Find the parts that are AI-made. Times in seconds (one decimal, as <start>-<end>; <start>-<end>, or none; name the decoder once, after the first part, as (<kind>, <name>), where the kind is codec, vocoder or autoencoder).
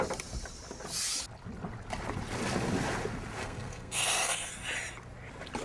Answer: 3.4-4.5 (codec, SNAC)